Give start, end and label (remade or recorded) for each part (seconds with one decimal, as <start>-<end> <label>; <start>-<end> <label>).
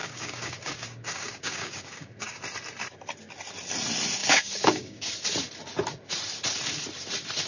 0.0-2.4 remade; 2.4-4.2 recorded; 4.2-5.1 remade; 5.1-7.5 recorded